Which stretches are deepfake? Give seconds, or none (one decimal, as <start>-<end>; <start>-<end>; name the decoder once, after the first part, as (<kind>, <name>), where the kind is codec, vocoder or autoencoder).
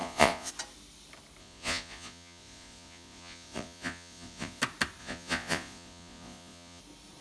0.0-0.5 (vocoder, Vocos); 1.4-4.6; 5.0-6.8